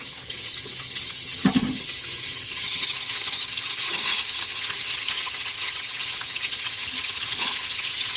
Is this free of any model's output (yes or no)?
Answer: no